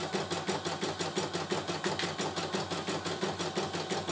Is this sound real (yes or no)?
yes